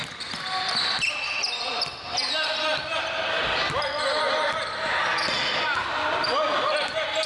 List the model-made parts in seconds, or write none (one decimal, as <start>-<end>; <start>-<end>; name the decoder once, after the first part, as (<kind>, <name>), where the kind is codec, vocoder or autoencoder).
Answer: none